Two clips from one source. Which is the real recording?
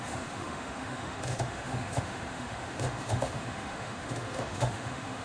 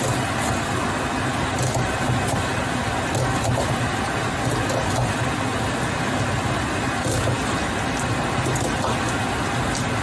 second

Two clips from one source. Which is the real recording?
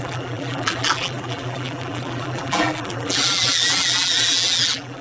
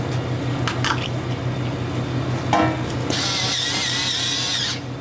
second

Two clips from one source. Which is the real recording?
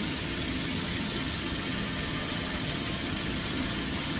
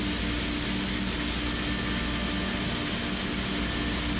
second